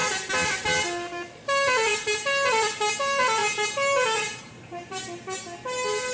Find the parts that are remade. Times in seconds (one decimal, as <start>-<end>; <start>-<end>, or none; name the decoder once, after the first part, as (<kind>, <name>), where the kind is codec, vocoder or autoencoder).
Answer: 0.0-0.6 (vocoder, BigVGAN v2); 3.4-5.0